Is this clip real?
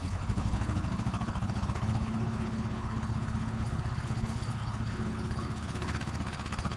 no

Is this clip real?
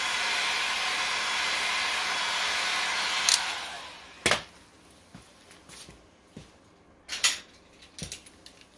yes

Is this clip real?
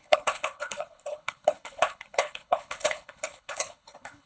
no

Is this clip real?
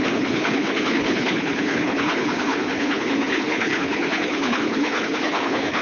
no